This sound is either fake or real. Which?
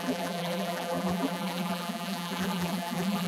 fake